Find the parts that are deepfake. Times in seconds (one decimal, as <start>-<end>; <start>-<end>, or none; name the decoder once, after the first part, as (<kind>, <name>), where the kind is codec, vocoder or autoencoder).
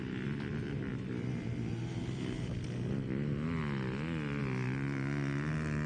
none